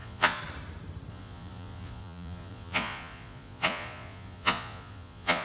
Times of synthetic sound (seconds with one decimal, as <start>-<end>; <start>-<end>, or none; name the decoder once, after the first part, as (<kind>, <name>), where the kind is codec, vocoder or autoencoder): 0.0-0.4 (vocoder, Vocos); 1.1-5.4